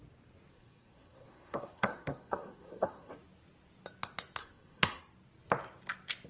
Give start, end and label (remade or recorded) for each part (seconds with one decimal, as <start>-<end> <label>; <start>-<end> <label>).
0.0-0.5 recorded; 0.5-3.1 remade; 3.1-4.4 recorded; 4.4-5.0 remade; 5.0-6.3 recorded